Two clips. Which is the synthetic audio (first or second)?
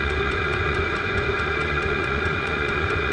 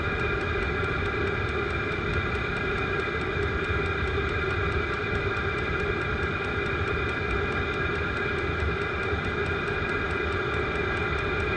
first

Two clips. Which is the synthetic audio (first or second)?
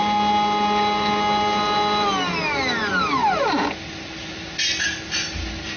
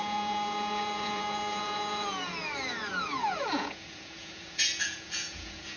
second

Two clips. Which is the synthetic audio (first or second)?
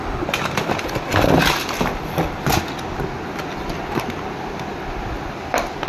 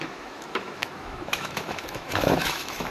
second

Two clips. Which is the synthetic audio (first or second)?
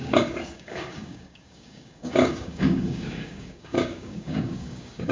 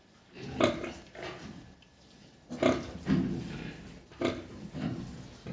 first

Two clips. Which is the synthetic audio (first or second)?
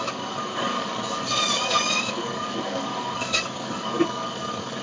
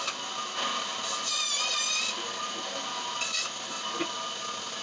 first